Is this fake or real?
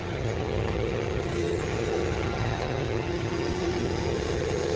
fake